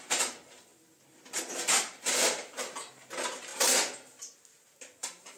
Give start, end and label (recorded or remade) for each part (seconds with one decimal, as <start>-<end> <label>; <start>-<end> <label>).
0.0-0.7 remade; 0.7-1.4 recorded; 1.4-3.5 remade; 3.5-5.0 recorded; 5.0-5.4 remade